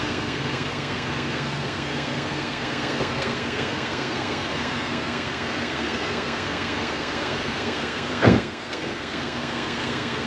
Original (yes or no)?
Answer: no